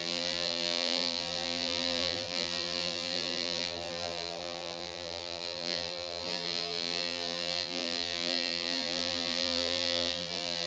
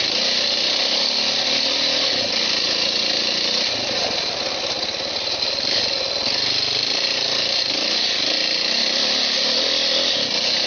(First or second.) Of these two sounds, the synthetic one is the first